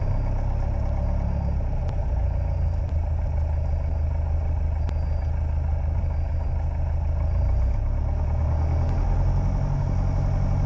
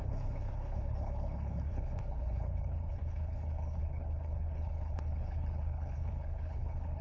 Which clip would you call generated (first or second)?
second